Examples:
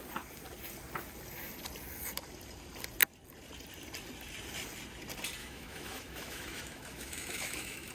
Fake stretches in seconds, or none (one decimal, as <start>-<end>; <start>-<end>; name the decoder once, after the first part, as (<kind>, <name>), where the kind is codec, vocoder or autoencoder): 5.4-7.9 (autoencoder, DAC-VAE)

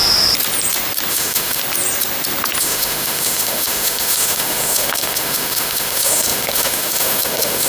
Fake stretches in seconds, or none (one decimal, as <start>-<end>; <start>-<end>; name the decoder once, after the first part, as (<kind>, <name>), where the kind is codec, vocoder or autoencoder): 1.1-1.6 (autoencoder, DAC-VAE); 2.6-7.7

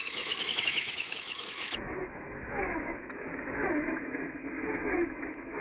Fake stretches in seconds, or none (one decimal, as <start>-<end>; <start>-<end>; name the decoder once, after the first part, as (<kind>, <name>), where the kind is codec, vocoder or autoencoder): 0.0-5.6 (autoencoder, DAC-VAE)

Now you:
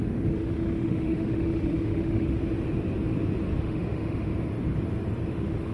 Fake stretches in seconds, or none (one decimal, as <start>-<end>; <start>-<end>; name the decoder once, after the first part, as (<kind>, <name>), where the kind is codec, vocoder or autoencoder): 0.0-2.4 (autoencoder, DAC-VAE); 3.6-4.3; 5.3-5.7

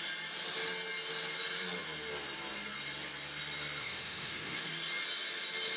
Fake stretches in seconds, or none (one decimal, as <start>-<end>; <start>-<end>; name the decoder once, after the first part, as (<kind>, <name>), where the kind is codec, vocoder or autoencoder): 3.8-4.7 (autoencoder, DAC-VAE)

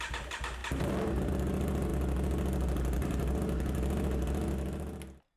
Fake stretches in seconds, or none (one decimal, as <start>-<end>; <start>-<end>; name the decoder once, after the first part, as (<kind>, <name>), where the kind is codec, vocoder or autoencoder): none

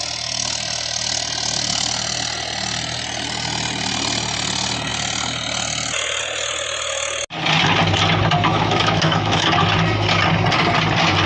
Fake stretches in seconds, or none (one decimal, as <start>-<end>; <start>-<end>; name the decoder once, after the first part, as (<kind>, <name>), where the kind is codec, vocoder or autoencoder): 8.5-9.5 (autoencoder, DAC-VAE)